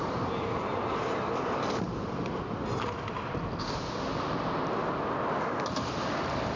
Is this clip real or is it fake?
real